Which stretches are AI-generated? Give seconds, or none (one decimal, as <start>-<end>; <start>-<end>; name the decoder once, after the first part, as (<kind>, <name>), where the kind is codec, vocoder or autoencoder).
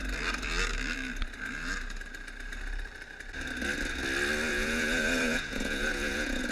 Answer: 4.5-6.5 (vocoder, Vocos)